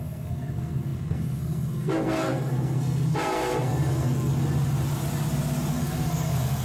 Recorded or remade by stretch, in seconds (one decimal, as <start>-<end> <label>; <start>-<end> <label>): 0.0-4.3 remade; 4.3-5.7 recorded; 5.7-6.6 remade